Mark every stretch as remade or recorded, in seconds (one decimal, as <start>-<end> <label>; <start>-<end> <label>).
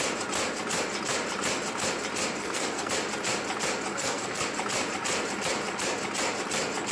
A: 0.0-2.4 recorded; 2.4-2.9 remade; 2.9-3.9 recorded; 3.9-4.4 remade; 4.4-6.9 recorded